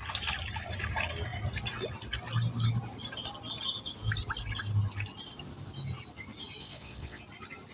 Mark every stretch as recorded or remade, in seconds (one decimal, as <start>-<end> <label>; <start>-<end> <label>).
0.0-6.6 recorded; 6.6-7.2 remade; 7.2-7.7 recorded